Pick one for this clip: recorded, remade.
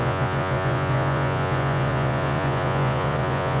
remade